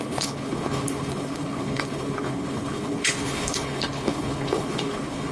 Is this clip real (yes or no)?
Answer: no